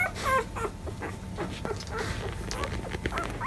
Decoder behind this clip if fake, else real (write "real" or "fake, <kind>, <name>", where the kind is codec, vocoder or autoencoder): real